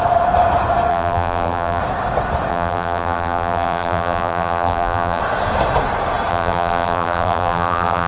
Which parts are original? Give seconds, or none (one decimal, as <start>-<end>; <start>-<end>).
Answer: 0.0-0.9; 1.8-2.5; 5.2-6.3